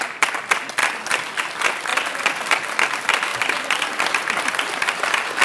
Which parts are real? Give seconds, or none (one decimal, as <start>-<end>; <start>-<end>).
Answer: 0.0-0.8; 1.4-1.9; 2.5-3.3